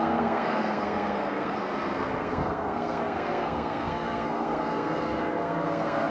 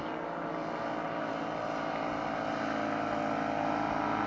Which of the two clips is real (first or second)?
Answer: second